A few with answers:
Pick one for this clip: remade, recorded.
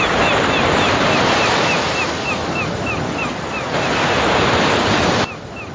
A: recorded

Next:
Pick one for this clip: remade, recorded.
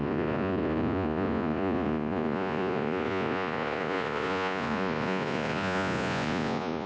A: remade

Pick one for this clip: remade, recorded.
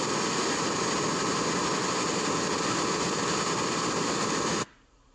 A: recorded